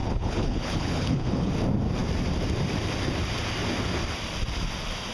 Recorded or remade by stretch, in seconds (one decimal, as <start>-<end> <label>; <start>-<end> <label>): 0.0-1.5 remade; 1.5-5.1 recorded